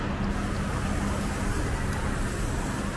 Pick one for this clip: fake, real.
real